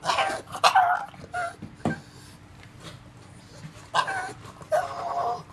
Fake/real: real